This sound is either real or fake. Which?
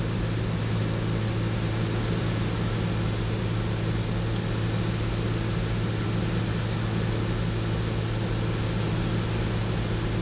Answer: real